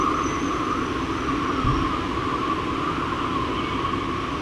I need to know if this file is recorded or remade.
recorded